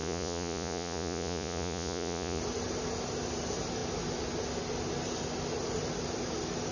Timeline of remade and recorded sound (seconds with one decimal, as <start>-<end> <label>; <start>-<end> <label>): 0.0-2.4 remade; 2.4-6.7 recorded